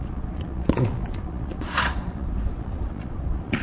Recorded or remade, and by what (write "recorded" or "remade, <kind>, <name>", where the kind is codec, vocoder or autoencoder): remade, vocoder, Vocos